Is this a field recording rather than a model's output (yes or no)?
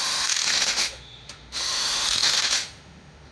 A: no